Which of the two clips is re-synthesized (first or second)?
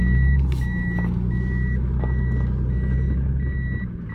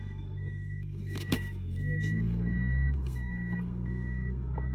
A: second